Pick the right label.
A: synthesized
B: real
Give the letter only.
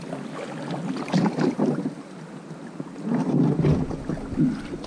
B